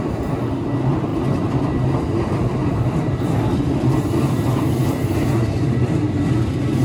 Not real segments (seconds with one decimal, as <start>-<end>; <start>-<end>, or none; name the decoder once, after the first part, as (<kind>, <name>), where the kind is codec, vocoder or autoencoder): none